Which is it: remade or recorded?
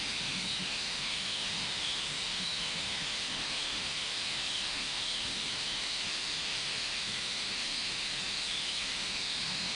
remade